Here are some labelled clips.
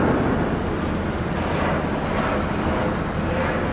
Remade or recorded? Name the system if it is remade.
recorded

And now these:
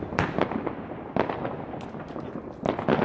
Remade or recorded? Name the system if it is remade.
recorded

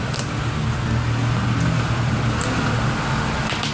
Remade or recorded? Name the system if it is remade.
recorded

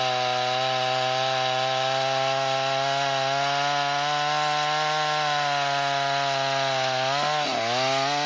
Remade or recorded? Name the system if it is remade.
recorded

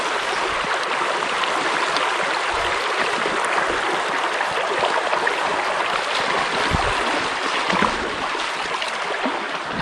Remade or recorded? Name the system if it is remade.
recorded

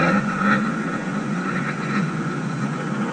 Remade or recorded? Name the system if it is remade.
remade, vocoder, Vocos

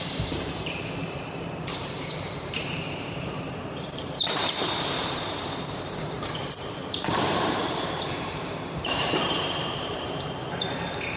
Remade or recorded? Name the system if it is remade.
remade, vocoder, BigVGAN v2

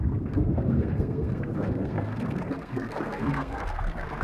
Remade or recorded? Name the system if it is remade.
remade, codec, SNAC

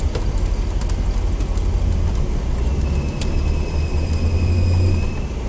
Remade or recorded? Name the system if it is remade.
recorded